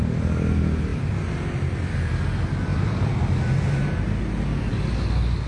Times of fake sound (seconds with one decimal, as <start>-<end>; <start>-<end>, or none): 0.9-2.1; 2.7-4.0

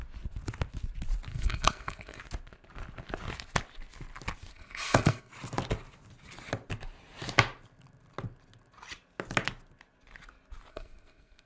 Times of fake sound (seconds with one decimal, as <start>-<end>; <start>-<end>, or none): 1.3-2.2; 4.5-5.3; 10.7-11.5

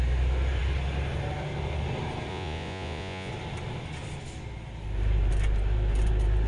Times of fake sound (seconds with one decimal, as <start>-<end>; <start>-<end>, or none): 2.3-3.3

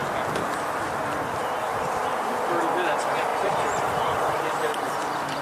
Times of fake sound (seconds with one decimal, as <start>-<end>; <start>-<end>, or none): 1.7-2.3; 3.3-3.8